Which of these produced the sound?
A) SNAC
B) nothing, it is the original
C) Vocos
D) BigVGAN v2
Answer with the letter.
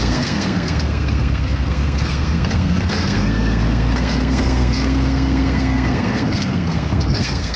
A